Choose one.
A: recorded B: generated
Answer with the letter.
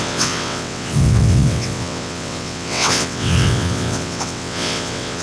B